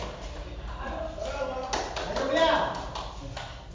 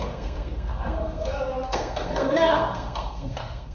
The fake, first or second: second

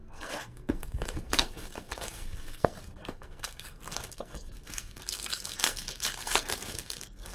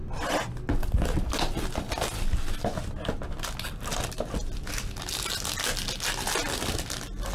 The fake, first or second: first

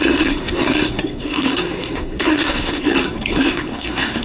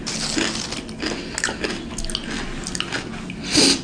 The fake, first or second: first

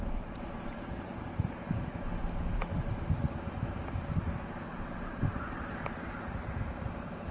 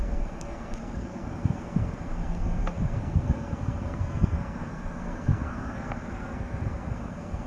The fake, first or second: second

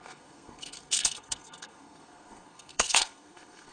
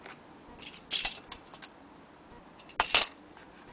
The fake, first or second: first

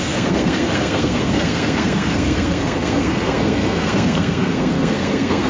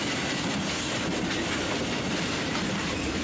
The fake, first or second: first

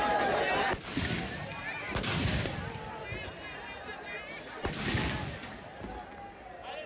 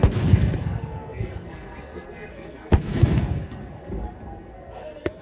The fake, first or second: second